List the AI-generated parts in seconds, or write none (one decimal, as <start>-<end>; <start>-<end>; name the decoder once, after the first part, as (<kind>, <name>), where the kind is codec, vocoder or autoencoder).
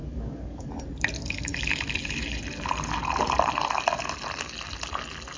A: 0.0-0.7 (codec, DAC)